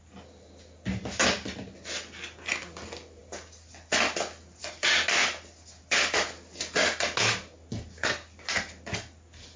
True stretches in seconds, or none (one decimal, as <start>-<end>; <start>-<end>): 0.0-9.6